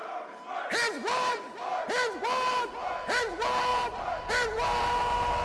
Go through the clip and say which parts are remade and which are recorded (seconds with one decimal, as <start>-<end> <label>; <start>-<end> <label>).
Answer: 0.0-5.4 recorded